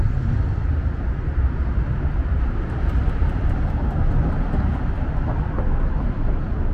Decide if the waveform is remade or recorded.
recorded